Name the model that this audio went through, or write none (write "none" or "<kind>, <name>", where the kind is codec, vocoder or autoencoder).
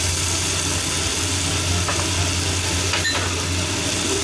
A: none